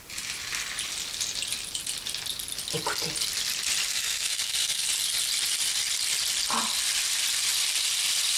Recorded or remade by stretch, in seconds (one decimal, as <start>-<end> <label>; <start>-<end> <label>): 0.0-3.9 recorded; 3.9-4.9 remade; 4.9-8.4 recorded